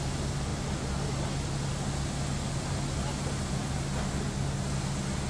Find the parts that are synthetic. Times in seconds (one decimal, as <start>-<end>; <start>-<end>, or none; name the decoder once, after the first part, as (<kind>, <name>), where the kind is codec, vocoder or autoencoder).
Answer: none